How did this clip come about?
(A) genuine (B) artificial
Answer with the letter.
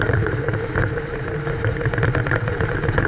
B